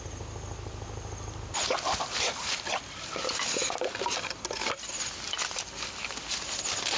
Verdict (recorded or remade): recorded